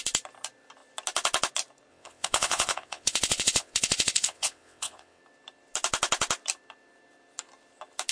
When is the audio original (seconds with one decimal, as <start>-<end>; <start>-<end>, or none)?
0.0-1.9; 5.2-8.1